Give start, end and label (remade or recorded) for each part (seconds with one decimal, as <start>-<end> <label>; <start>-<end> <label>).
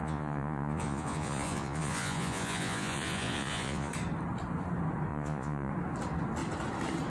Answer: 0.0-3.9 remade; 3.9-5.1 recorded; 5.1-5.7 remade; 5.7-7.1 recorded